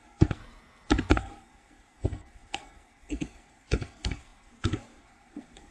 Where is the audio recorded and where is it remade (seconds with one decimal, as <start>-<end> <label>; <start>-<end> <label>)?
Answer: 0.0-0.4 remade; 0.4-1.1 recorded; 1.1-5.7 remade